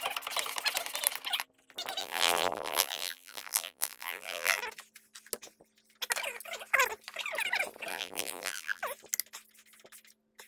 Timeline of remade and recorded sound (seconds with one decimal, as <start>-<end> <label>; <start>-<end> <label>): 0.0-2.0 recorded; 2.0-4.6 remade; 4.6-7.9 recorded; 7.9-8.8 remade; 8.8-10.5 recorded